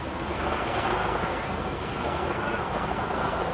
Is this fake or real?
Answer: fake